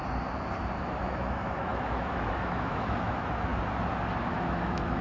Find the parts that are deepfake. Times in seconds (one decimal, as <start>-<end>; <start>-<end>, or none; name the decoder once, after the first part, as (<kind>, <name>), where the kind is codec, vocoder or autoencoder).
0.8-3.5 (autoencoder, DAC-VAE); 4.2-5.0